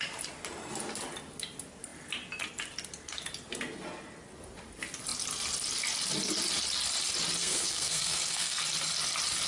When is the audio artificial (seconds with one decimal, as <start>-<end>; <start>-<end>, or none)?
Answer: 7.4-8.6